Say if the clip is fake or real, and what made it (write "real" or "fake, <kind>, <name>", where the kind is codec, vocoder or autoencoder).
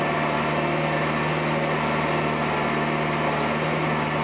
real